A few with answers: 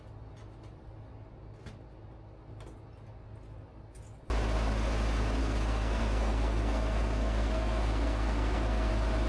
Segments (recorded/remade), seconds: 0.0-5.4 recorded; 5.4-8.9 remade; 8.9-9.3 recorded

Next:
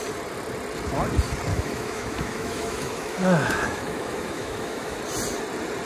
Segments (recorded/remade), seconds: 0.0-1.5 recorded; 1.5-5.0 remade; 5.0-5.9 recorded

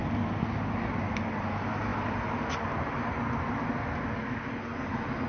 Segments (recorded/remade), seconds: 0.0-5.3 recorded